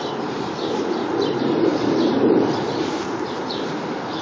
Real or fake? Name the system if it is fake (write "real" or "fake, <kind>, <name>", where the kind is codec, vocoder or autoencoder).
fake, vocoder, BigVGAN v2